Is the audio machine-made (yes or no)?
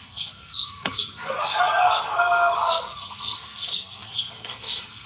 yes